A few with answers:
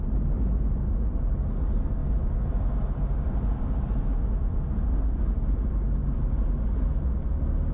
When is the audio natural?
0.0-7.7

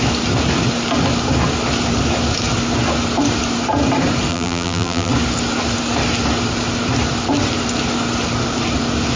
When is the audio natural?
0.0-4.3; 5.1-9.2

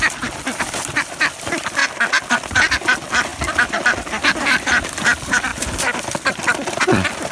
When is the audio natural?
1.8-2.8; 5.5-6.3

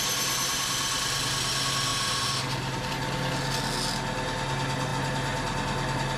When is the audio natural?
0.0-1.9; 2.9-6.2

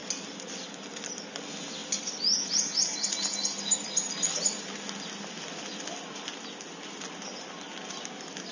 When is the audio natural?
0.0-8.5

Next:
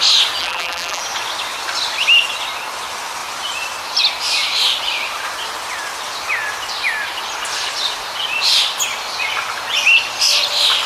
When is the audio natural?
0.0-0.4; 1.0-10.9